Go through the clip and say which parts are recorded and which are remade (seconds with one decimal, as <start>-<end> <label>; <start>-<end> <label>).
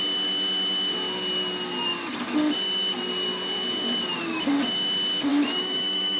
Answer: 0.0-5.3 recorded; 5.3-6.2 remade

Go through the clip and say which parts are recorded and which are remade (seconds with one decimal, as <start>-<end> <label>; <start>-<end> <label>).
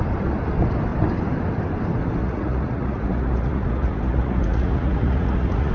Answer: 0.0-2.2 recorded; 2.2-5.7 remade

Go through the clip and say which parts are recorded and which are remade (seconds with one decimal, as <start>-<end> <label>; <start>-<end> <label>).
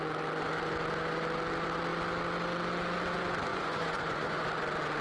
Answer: 0.0-3.5 recorded; 3.5-4.4 remade; 4.4-5.0 recorded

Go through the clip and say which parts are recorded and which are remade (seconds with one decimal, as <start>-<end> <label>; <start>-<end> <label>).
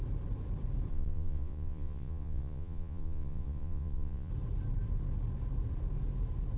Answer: 0.0-0.9 recorded; 0.9-4.3 remade; 4.3-6.6 recorded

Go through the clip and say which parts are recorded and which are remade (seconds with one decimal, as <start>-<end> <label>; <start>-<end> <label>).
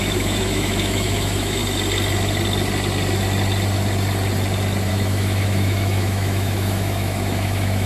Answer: 0.0-1.6 remade; 1.6-4.9 recorded; 4.9-7.9 remade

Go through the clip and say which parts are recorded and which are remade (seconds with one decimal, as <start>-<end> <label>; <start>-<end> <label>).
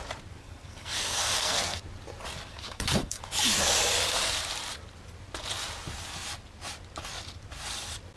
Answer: 0.0-0.4 recorded; 0.4-1.8 remade; 1.8-2.5 recorded; 2.5-3.2 remade; 3.2-8.2 recorded